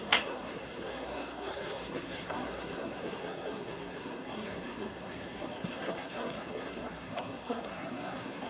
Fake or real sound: fake